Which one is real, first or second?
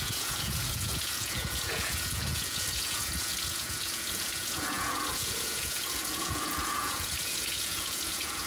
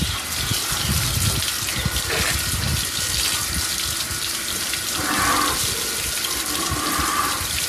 second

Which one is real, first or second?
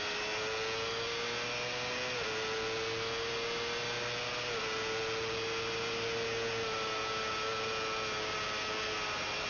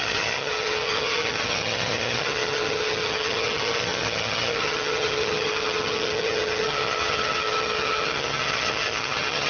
first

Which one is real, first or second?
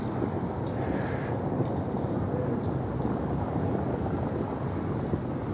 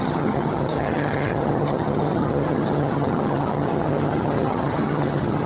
first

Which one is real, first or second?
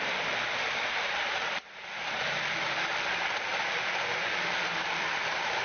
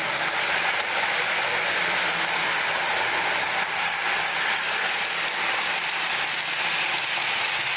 second